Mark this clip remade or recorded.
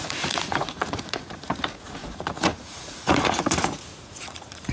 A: remade